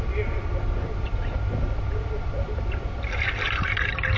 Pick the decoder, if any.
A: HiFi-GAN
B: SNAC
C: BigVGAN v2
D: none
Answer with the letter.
D